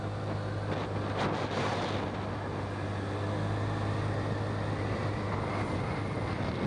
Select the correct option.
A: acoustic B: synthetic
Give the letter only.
A